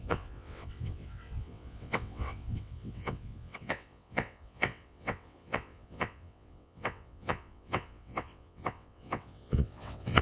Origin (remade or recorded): remade